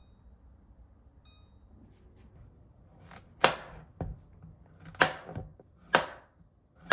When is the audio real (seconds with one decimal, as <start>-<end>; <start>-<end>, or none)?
0.0-6.9

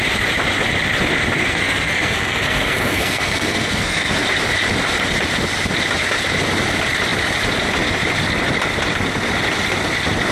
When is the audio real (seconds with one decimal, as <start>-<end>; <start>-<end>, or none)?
0.0-1.4; 4.1-10.3

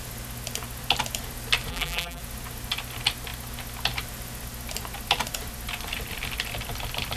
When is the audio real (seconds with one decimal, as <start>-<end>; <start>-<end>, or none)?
0.0-1.7; 2.2-7.2

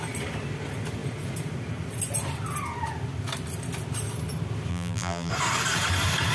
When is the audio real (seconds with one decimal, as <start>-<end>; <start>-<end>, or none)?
0.0-4.7; 5.3-6.3

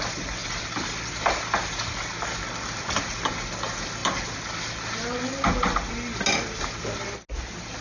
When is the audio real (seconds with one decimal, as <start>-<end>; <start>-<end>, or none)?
0.0-7.8

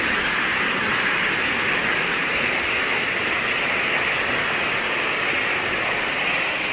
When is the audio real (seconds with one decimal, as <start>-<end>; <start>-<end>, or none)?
0.0-6.7

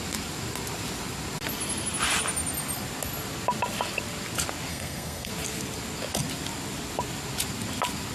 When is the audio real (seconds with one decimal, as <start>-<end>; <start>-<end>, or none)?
0.0-4.7; 5.3-8.1